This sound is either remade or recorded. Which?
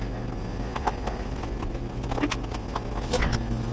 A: recorded